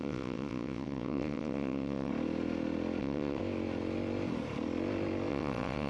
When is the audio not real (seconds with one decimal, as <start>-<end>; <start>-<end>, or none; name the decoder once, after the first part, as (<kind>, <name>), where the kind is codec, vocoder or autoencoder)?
0.0-2.1 (vocoder, WaveNeXt); 3.0-3.4; 5.3-5.9